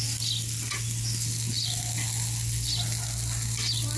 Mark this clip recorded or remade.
recorded